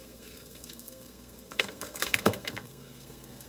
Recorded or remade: remade